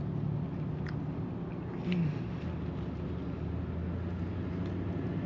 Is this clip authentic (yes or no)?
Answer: yes